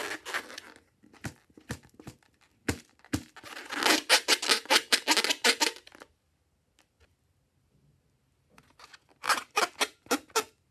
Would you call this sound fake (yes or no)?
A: no